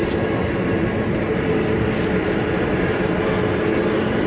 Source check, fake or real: real